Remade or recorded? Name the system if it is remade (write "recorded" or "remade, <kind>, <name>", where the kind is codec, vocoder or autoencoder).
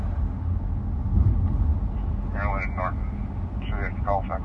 recorded